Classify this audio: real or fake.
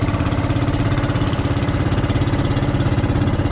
real